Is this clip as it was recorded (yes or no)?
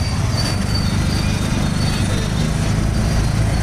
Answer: yes